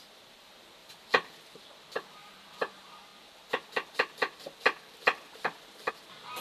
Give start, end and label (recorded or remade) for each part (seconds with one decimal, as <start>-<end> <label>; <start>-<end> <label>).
0.0-2.2 recorded; 2.2-2.7 remade; 2.7-6.4 recorded